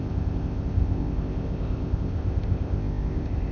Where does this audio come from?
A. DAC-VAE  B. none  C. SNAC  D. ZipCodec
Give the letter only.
D